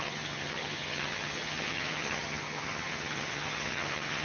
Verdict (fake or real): fake